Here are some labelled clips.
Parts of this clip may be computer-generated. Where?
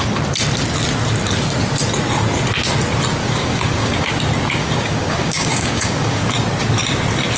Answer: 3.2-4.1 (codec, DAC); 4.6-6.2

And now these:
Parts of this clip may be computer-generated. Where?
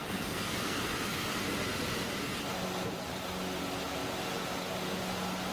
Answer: 0.0-1.4 (codec, SNAC)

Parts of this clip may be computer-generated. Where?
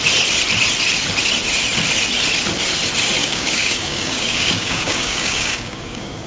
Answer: 3.2-6.3 (codec, DAC)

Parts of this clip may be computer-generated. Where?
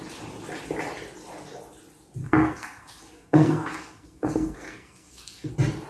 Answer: 2.2-5.5 (codec, SNAC)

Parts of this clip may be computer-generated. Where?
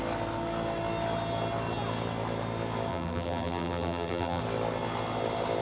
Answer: 2.9-4.4 (vocoder, BigVGAN v2)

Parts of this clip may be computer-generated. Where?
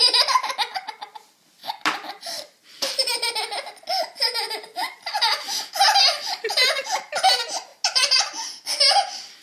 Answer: none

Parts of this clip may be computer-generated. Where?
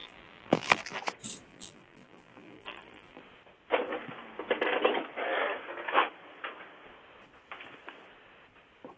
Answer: 0.0-1.0 (vocoder, BigVGAN v2); 1.5-3.2